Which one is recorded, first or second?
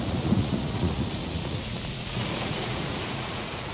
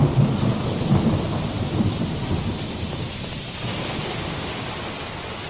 second